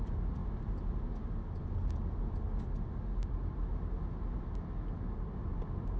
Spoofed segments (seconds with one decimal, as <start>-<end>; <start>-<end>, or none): none